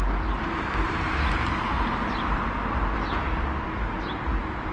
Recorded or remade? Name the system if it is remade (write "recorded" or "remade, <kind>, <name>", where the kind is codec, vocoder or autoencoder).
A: recorded